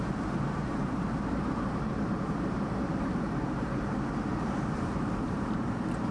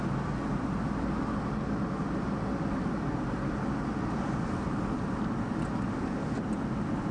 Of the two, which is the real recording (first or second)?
second